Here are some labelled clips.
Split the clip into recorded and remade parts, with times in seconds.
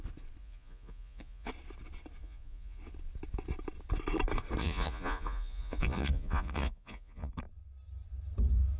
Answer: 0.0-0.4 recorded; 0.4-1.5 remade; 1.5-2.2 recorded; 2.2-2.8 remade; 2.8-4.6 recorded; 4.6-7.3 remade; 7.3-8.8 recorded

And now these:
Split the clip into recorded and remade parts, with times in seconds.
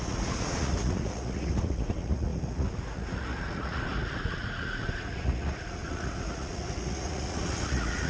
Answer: 0.0-8.1 remade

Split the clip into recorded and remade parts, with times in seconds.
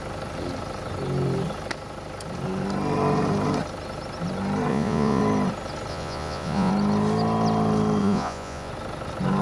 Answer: 0.0-4.7 recorded; 4.7-5.2 remade; 5.2-5.9 recorded; 5.9-6.7 remade; 6.7-8.0 recorded; 8.0-8.7 remade; 8.7-9.4 recorded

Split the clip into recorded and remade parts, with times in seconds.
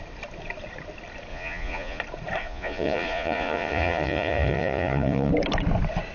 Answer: 0.0-1.3 recorded; 1.3-2.0 remade; 2.0-2.4 recorded; 2.4-5.3 remade; 5.3-6.1 recorded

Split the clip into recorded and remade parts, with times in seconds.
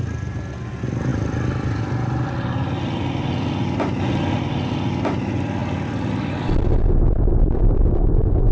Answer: 0.0-8.5 recorded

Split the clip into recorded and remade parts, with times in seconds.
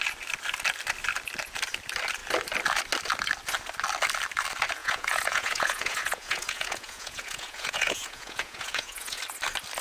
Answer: 0.0-4.8 recorded; 4.8-9.2 remade; 9.2-9.8 recorded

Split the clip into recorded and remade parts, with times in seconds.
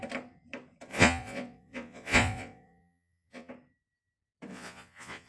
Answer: 0.0-0.9 recorded; 0.9-3.5 remade; 3.5-4.5 recorded; 4.5-5.3 remade